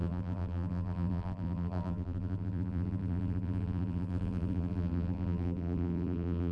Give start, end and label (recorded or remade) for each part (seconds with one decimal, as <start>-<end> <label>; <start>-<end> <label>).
0.0-6.5 remade